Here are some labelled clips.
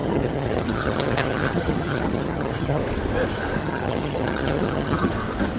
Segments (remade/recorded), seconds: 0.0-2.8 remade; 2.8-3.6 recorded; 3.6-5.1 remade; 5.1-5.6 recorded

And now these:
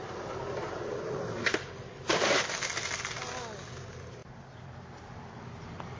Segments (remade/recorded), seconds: 0.0-6.0 recorded

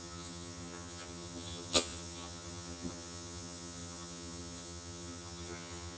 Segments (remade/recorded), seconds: 0.0-6.0 remade

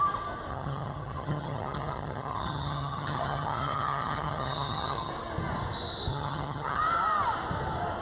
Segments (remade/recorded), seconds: 0.0-0.5 recorded; 0.5-5.1 remade; 5.1-6.1 recorded; 6.1-6.8 remade; 6.8-8.0 recorded

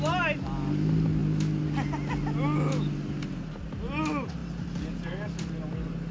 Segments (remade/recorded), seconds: 0.0-6.1 recorded